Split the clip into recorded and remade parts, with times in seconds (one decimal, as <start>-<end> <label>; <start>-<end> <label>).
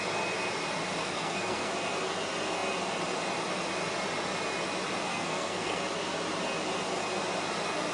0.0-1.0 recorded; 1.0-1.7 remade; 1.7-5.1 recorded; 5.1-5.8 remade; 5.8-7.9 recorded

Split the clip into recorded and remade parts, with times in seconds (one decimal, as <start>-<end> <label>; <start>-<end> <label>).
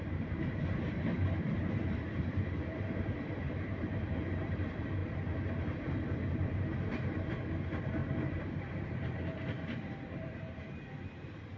0.0-5.0 remade; 5.0-7.3 recorded; 7.3-11.6 remade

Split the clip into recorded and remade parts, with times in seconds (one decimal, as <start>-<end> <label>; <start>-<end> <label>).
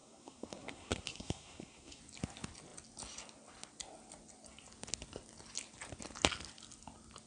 0.0-2.0 remade; 2.0-7.3 recorded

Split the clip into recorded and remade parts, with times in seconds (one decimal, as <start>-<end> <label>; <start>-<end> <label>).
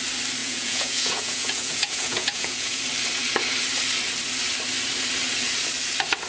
0.0-0.4 recorded; 0.4-2.8 remade; 2.8-6.3 recorded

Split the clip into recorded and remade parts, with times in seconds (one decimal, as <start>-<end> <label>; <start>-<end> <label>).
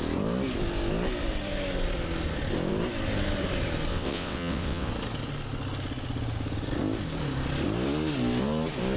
0.0-3.9 recorded; 3.9-4.9 remade; 4.9-9.0 recorded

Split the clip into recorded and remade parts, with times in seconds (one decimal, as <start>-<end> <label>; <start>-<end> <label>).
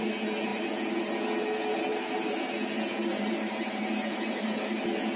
0.0-1.9 recorded; 1.9-2.4 remade; 2.4-3.0 recorded; 3.0-4.8 remade; 4.8-5.2 recorded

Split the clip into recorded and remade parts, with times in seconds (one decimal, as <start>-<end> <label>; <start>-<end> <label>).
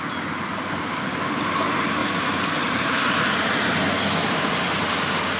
0.0-2.0 recorded; 2.0-2.9 remade; 2.9-5.4 recorded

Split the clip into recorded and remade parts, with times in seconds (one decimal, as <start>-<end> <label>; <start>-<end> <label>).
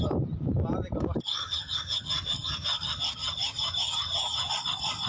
0.0-1.4 recorded; 1.4-4.5 remade; 4.5-5.1 recorded